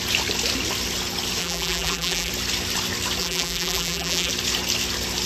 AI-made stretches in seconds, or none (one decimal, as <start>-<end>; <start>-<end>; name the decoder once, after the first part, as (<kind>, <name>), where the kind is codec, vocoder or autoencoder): 1.4-2.3 (vocoder, BigVGAN v2); 3.2-4.3

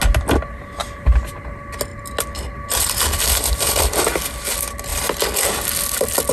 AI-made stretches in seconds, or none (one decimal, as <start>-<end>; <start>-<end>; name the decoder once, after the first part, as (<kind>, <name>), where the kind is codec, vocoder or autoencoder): 0.8-1.4 (vocoder, BigVGAN v2)

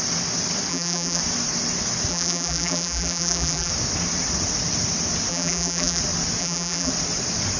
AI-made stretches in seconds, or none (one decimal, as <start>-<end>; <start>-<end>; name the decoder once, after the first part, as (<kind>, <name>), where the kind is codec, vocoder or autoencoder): 0.7-1.2 (vocoder, BigVGAN v2); 2.1-3.7; 5.3-6.0; 6.4-6.9

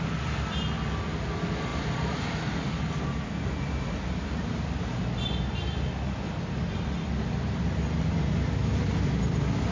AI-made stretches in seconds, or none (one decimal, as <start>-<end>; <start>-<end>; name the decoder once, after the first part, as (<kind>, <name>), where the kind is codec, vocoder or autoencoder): 1.7-2.4 (vocoder, BigVGAN v2)

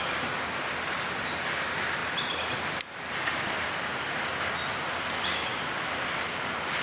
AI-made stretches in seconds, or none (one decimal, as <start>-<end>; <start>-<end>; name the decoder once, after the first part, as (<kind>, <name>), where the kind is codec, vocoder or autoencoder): none

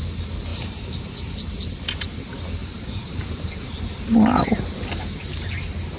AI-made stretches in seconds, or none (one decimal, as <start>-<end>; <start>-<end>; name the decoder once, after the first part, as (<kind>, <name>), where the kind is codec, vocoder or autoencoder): 0.5-1.1 (vocoder, BigVGAN v2); 2.6-4.5

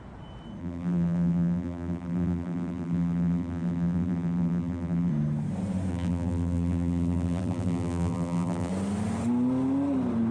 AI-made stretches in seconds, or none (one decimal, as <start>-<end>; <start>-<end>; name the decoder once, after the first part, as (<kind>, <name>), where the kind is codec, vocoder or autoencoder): 0.6-5.1 (vocoder, BigVGAN v2); 5.9-8.7

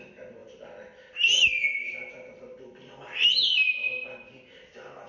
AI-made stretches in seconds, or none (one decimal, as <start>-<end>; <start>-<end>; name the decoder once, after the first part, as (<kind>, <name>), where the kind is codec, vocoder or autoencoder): 0.4-3.5 (vocoder, BigVGAN v2)